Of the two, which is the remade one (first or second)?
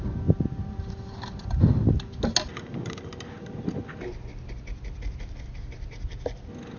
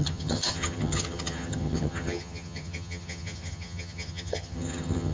second